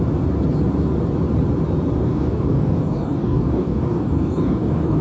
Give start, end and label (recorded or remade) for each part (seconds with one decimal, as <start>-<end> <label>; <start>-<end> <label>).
0.0-2.0 recorded; 2.0-5.0 remade